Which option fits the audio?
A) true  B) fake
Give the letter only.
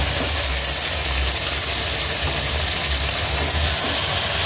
A